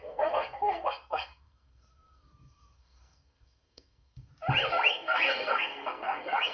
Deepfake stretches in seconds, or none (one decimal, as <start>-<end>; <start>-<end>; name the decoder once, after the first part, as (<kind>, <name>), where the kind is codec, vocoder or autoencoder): 0.0-4.3 (codec, SNAC); 4.9-6.5